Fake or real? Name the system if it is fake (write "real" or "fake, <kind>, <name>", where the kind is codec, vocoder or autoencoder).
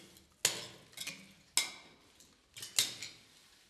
real